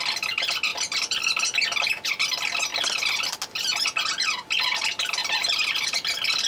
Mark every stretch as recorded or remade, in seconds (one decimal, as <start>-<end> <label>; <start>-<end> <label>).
0.0-0.7 recorded; 0.7-1.2 remade; 1.2-5.2 recorded; 5.2-6.1 remade; 6.1-6.5 recorded